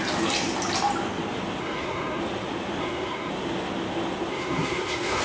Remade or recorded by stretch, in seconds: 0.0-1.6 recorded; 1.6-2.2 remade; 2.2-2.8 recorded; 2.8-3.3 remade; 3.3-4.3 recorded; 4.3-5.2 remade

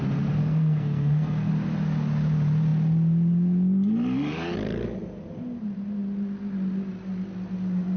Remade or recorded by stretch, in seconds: 0.0-0.4 recorded; 0.4-1.5 remade; 1.5-8.0 recorded

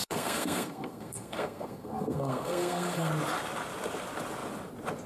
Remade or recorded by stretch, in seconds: 0.0-3.1 remade; 3.1-5.1 recorded

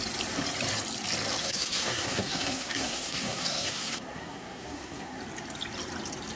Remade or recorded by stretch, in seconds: 0.0-1.4 recorded; 1.4-5.2 remade; 5.2-6.4 recorded

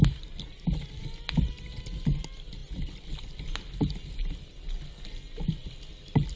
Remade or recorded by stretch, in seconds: 0.0-6.4 recorded